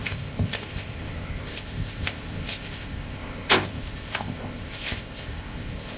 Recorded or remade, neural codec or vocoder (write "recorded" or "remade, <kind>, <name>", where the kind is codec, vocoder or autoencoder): remade, codec, ZipCodec